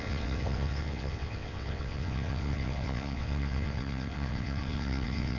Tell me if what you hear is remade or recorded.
remade